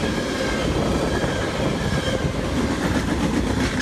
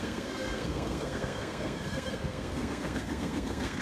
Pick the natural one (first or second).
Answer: first